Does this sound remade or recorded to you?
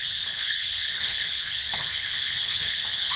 remade